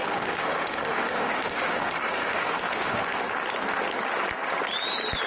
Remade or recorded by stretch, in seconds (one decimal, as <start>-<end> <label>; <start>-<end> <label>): 0.0-3.2 remade; 3.2-5.3 recorded